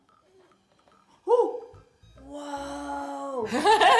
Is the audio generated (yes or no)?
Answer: no